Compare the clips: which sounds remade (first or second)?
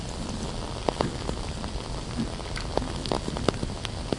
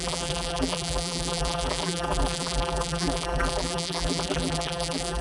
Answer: second